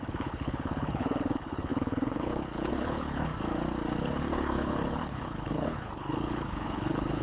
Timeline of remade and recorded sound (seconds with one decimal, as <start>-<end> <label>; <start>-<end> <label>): 0.0-3.3 remade; 3.3-4.0 recorded; 4.0-7.2 remade